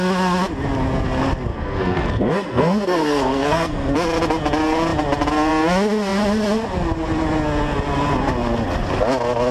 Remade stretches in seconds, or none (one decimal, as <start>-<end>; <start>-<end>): 1.5-3.9